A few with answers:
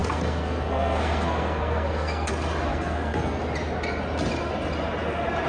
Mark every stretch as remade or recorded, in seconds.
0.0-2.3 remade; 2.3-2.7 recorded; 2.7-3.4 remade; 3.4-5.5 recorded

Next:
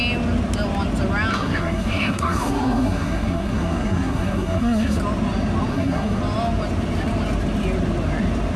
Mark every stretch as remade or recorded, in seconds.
0.0-1.3 recorded; 1.3-5.0 remade; 5.0-5.7 recorded; 5.7-6.2 remade; 6.2-8.6 recorded

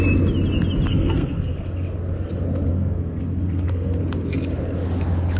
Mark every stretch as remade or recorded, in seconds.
0.0-0.9 recorded; 0.9-1.5 remade; 1.5-2.7 recorded; 2.7-4.0 remade; 4.0-5.4 recorded

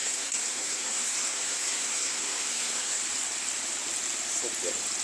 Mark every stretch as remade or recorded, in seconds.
0.0-3.0 remade; 3.0-5.0 recorded

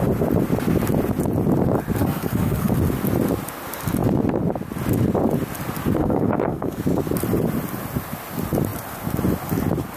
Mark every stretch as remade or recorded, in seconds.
0.0-2.0 recorded; 2.0-2.7 remade; 2.7-6.0 recorded; 6.0-6.8 remade; 6.8-10.0 recorded

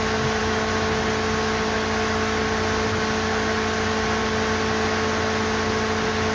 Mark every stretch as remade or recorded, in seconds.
0.0-6.3 recorded